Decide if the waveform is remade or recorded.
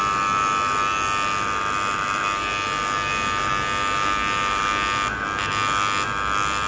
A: recorded